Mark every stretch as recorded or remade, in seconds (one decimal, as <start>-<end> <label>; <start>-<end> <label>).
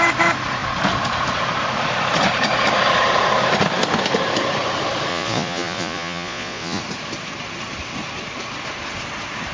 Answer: 0.0-5.1 recorded; 5.1-6.8 remade; 6.8-9.5 recorded